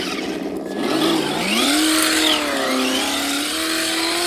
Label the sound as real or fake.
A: real